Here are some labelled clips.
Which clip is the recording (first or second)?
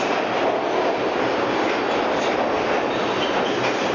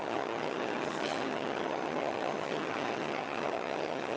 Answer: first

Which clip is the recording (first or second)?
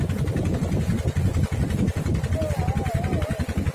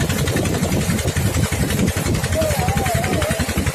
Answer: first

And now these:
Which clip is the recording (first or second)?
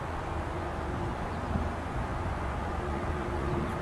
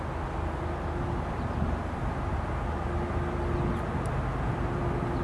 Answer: second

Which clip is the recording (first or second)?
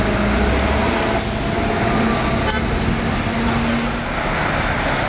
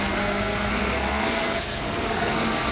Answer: first